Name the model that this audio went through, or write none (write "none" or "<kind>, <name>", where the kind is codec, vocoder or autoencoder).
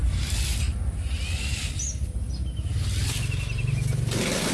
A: none